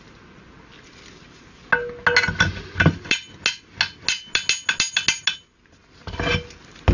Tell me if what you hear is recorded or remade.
recorded